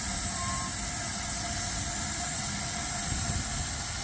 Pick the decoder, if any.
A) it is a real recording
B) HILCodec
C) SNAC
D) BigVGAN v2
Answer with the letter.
A